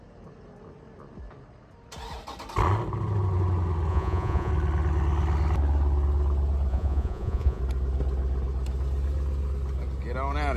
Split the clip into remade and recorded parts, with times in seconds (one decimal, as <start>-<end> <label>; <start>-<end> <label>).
0.0-3.9 recorded; 3.9-4.5 remade; 4.5-6.7 recorded; 6.7-7.6 remade; 7.6-10.6 recorded